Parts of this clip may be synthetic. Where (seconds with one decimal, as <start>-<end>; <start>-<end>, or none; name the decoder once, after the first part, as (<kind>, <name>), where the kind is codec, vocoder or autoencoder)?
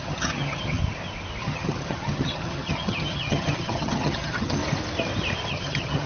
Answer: 0.0-0.8 (vocoder, HiFi-GAN); 1.4-4.6; 5.5-6.1